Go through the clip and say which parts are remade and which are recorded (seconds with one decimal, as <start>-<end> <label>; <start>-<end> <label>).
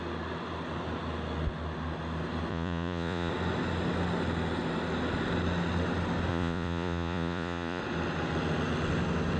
0.0-2.5 recorded; 2.5-3.3 remade; 3.3-6.3 recorded; 6.3-7.8 remade; 7.8-9.4 recorded